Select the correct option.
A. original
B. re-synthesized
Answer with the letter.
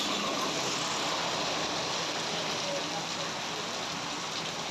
A